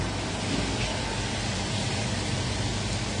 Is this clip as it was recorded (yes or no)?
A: yes